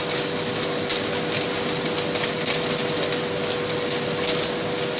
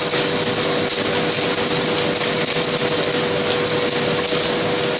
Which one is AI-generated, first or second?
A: first